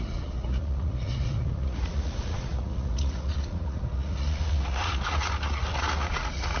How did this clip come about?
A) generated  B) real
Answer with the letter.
A